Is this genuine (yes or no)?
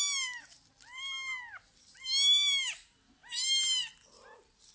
yes